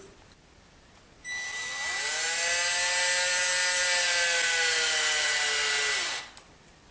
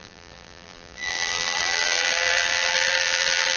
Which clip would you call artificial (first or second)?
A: second